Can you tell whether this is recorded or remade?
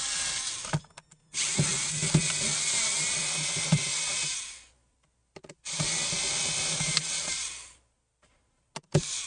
recorded